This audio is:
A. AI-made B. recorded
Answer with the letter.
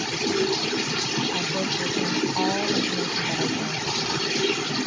B